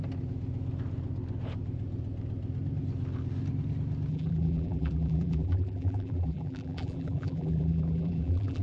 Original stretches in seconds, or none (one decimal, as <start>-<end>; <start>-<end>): 0.0-4.1